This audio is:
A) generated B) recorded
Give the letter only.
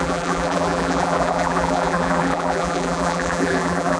A